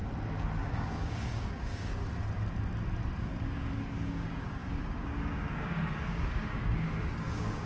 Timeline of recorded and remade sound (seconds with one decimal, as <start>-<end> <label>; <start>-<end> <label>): 0.0-0.7 recorded; 0.7-2.0 remade; 2.0-3.2 recorded; 3.2-7.7 remade